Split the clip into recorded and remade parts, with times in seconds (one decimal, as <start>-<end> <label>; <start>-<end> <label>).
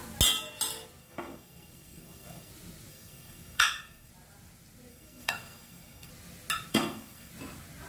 0.0-1.0 recorded; 1.0-2.5 remade; 2.5-2.9 recorded; 2.9-4.1 remade; 4.1-4.9 recorded; 4.9-6.1 remade; 6.1-6.7 recorded; 6.7-7.3 remade; 7.3-7.9 recorded